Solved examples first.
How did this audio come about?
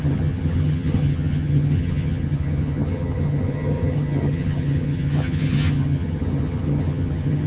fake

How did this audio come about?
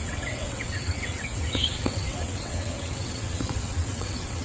fake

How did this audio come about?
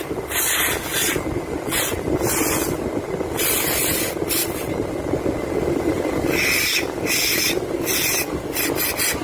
real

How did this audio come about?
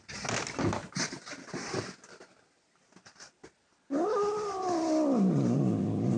real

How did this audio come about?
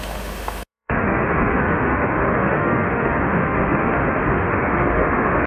fake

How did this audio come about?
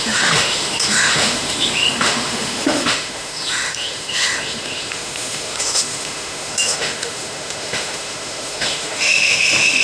fake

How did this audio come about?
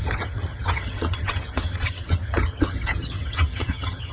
fake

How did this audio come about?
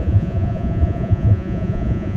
fake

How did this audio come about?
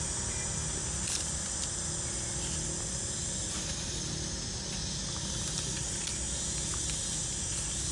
real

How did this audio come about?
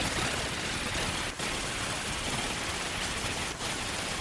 real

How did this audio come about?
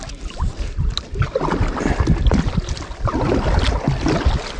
real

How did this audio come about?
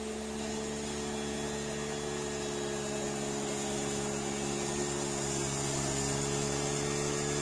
real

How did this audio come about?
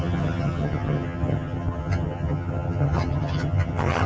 fake